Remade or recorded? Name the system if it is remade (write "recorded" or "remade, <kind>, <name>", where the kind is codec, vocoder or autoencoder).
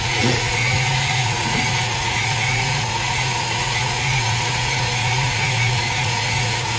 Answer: remade, vocoder, Vocos